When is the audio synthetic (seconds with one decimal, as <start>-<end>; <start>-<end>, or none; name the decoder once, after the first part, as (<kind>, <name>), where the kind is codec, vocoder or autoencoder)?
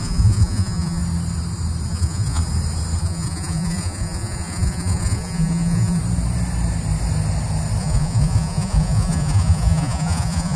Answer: 0.0-1.0 (vocoder, Vocos); 1.9-2.4; 3.0-6.0; 7.8-10.6